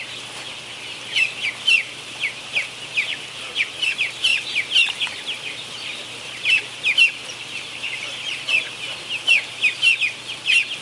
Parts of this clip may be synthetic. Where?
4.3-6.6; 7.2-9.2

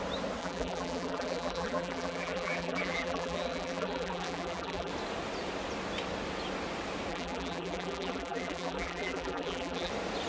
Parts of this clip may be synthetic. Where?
0.4-4.9; 7.1-9.9